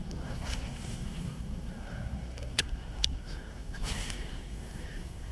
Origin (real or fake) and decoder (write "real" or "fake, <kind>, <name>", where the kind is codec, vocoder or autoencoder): fake, codec, SNAC